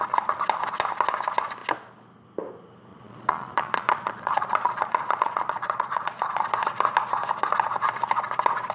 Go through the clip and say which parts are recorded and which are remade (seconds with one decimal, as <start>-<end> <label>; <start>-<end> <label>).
0.0-2.9 recorded; 2.9-6.5 remade; 6.5-8.7 recorded